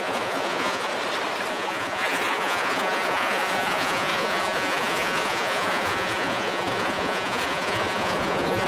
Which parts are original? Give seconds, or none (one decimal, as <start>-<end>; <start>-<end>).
0.9-1.5